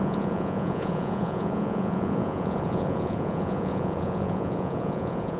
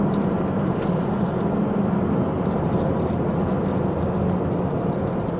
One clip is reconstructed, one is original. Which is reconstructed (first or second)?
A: first